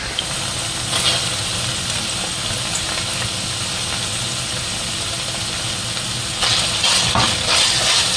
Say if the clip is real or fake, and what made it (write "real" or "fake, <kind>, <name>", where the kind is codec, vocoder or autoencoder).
real